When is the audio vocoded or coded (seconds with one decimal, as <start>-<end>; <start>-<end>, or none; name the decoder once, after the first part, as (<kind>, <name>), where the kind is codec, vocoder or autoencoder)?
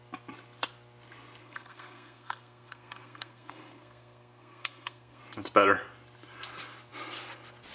1.4-5.2 (codec, SNAC)